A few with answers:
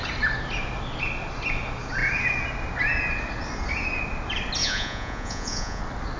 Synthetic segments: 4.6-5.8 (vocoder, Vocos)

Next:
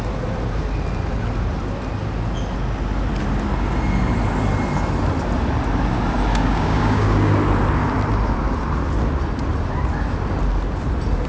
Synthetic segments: 6.3-7.3 (codec, DAC)

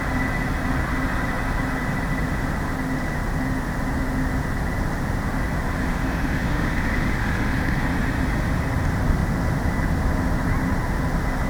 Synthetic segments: 5.9-7.8 (autoencoder, DAC-VAE)

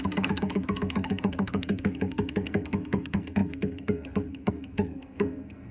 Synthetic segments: 0.0-5.7 (codec, SNAC)

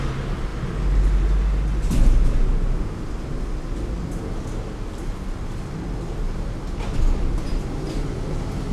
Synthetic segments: none

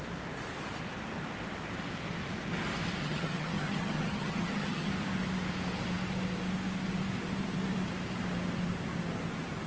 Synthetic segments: 3.0-4.9 (vocoder, HiFi-GAN)

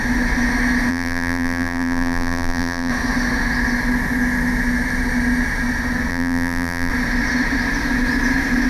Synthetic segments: 0.9-2.9 (vocoder, BigVGAN v2); 6.1-6.9

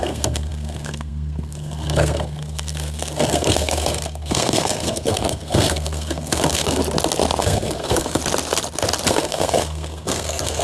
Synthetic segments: 0.0-6.8 (codec, SNAC); 7.4-8.2; 9.1-10.6